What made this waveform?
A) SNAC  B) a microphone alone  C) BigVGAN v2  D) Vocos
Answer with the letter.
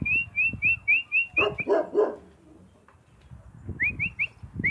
B